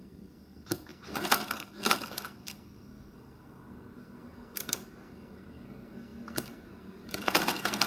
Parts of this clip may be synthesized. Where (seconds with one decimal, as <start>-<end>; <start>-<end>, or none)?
0.0-7.9